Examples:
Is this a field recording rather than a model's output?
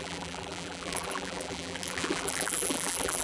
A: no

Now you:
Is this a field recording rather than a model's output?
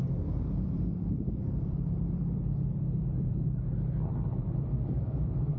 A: no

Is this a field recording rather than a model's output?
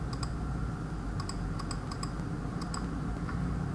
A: yes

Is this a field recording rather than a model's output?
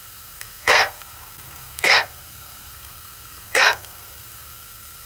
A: no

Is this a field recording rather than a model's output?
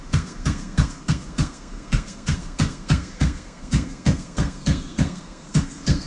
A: no